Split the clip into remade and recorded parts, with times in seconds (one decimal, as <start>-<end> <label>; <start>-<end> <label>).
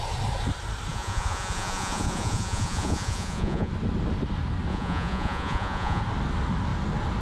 0.0-0.9 recorded; 0.9-3.7 remade; 3.7-4.7 recorded; 4.7-6.0 remade; 6.0-7.2 recorded